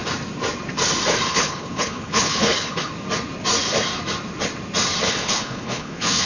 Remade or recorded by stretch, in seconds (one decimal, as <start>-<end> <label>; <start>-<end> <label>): 0.0-1.3 recorded; 1.3-2.9 remade; 2.9-5.0 recorded; 5.0-6.3 remade